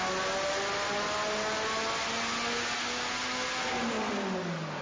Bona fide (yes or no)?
yes